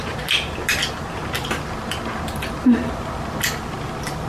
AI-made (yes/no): no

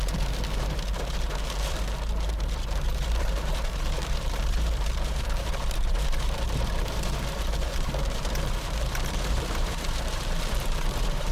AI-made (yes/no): yes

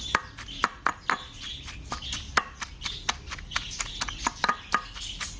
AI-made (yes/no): no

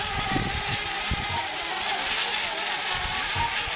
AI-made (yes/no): no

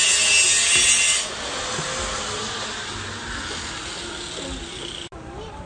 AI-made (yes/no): no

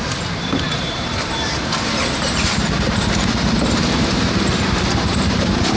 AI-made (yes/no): yes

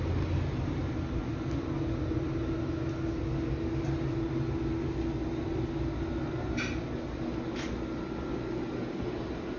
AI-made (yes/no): no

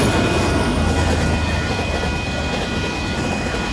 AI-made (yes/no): no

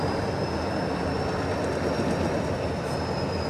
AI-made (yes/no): no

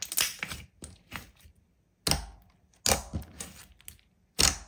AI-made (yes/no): no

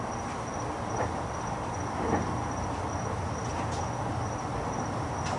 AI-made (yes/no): no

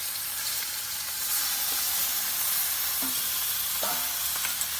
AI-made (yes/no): no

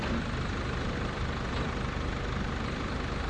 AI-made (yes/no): yes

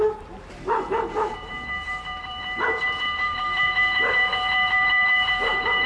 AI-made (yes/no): yes